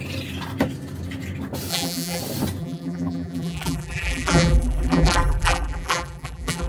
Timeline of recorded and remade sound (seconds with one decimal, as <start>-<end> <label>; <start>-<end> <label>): 0.0-1.7 recorded; 1.7-2.2 remade; 2.2-2.6 recorded; 2.6-6.7 remade